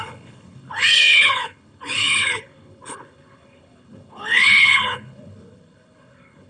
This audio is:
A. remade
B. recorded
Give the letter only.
A